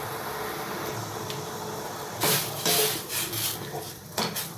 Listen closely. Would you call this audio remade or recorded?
remade